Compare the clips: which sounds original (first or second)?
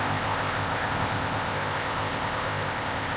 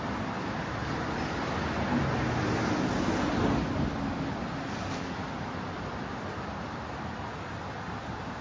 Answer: second